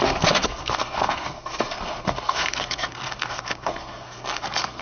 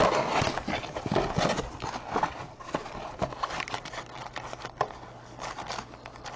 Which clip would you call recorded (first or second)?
second